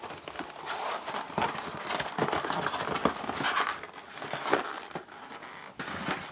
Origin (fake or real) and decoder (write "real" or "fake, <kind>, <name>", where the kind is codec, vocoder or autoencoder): real